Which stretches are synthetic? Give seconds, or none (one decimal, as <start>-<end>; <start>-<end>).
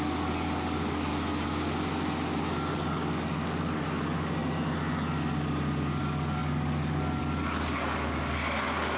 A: 0.0-1.1; 2.7-4.4; 6.0-9.0